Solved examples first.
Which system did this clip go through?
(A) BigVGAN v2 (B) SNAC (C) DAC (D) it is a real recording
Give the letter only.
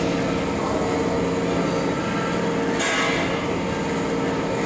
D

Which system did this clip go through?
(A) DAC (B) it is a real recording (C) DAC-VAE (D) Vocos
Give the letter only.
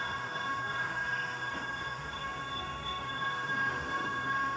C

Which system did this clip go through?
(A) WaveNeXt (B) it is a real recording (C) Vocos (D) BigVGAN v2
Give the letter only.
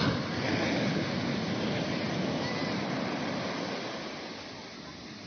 B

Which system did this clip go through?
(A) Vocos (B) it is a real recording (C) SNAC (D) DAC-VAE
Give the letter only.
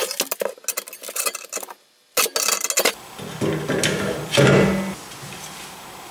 B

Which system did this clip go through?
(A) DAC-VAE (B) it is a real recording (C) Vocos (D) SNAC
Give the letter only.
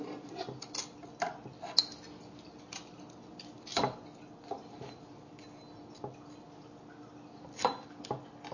B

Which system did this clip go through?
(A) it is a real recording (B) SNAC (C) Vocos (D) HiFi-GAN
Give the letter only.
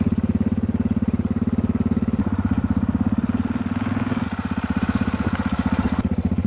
A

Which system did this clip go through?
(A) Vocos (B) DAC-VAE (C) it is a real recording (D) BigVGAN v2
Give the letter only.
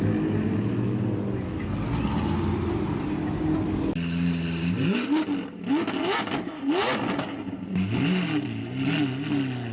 C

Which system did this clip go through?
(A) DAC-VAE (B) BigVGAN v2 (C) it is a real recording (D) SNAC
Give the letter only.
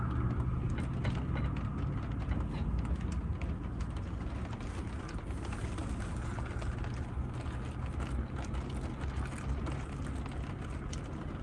C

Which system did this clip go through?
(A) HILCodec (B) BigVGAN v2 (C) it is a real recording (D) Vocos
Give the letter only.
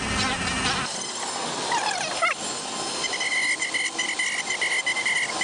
C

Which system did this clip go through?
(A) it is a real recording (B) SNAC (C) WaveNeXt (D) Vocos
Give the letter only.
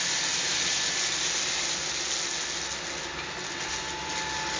A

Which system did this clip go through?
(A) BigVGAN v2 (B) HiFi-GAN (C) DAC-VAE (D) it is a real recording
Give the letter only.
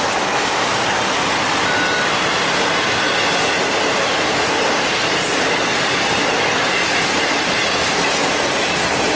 D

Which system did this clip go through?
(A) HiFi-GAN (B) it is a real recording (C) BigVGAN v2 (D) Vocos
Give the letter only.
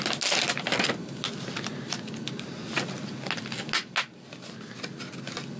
B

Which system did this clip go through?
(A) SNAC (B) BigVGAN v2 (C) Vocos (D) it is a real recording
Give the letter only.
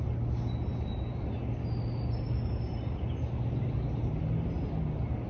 D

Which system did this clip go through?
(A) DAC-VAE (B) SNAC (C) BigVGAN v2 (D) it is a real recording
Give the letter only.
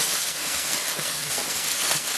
B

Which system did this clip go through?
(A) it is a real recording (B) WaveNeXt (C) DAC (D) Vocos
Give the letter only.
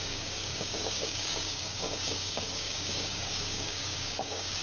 C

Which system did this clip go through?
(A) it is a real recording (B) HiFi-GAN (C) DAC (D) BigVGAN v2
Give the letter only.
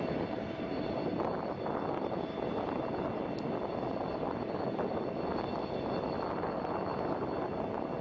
A